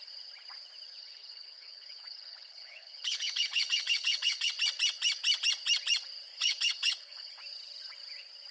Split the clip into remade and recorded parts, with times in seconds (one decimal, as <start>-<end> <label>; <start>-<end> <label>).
0.0-1.0 recorded; 1.0-4.5 remade; 4.5-6.3 recorded; 6.3-7.4 remade; 7.4-8.5 recorded